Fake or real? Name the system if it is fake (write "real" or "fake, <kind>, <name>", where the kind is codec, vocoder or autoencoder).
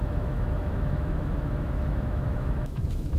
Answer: fake, autoencoder, DAC-VAE